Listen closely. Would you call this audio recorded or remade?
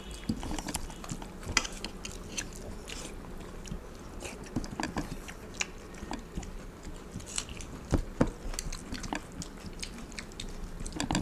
recorded